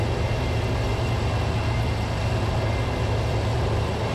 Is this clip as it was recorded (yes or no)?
yes